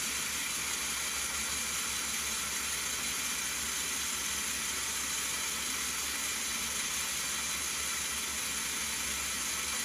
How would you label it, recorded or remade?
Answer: recorded